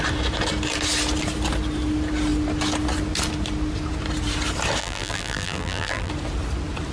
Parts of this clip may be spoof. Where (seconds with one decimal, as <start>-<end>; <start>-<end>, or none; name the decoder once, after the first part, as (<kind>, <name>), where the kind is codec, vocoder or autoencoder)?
4.8-6.1 (vocoder, BigVGAN v2)